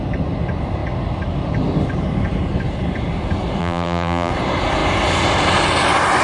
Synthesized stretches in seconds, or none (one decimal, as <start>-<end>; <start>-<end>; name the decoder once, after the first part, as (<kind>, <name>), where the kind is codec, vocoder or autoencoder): 3.6-4.3 (vocoder, BigVGAN v2)